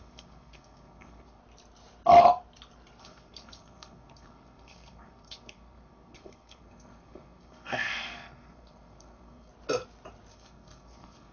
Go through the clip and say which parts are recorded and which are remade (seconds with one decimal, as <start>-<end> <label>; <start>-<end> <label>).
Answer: 0.0-1.4 remade; 1.4-3.0 recorded; 3.0-9.5 remade; 9.5-10.3 recorded; 10.3-11.3 remade